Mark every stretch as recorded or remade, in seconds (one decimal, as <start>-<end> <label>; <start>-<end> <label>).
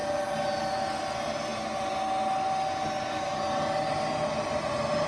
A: 0.0-5.1 recorded